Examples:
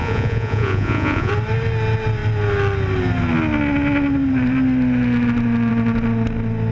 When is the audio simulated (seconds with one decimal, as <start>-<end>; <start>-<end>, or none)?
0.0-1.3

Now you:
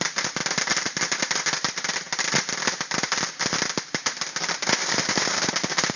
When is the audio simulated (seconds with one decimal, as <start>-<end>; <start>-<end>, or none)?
none

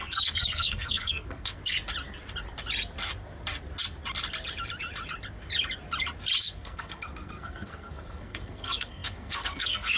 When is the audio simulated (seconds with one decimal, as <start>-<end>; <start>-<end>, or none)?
0.0-1.6; 6.4-10.0